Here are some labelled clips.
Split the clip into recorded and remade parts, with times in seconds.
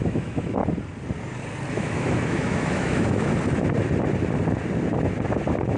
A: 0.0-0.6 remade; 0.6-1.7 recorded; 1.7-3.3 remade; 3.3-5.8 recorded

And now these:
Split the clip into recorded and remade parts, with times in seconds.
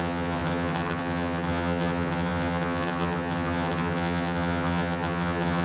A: 0.0-5.6 remade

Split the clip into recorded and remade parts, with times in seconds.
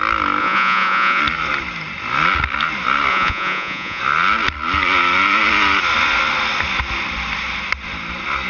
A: 0.0-0.4 recorded; 0.4-1.2 remade; 1.2-3.1 recorded; 3.1-4.0 remade; 4.0-8.5 recorded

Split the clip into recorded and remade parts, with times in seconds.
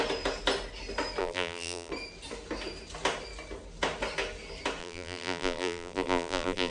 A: 0.0-1.2 recorded; 1.2-1.9 remade; 1.9-4.8 recorded; 4.8-6.7 remade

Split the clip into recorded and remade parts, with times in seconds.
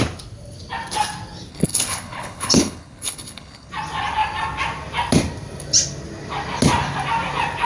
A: 0.0-1.5 recorded; 1.5-3.7 remade; 3.7-7.7 recorded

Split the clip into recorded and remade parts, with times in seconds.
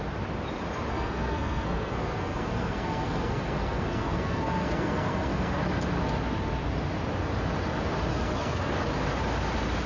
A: 0.0-0.9 recorded; 0.9-5.6 remade; 5.6-8.1 recorded; 8.1-8.7 remade; 8.7-9.9 recorded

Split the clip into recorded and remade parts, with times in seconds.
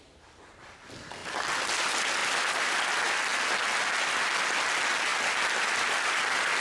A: 0.0-6.6 recorded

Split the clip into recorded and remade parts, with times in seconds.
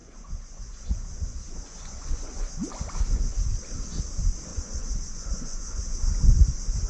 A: 0.0-2.7 remade; 2.7-4.5 recorded; 4.5-6.0 remade; 6.0-6.9 recorded